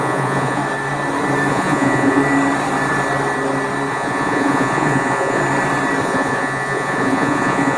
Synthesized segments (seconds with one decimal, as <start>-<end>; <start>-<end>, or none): 0.0-0.6; 1.5-2.2; 3.9-5.4; 6.0-7.8